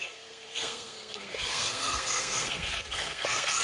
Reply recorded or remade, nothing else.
remade